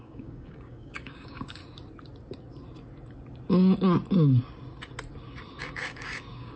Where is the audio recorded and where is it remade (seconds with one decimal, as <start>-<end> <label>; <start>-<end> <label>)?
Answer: 0.0-1.6 remade; 1.6-5.6 recorded; 5.6-6.6 remade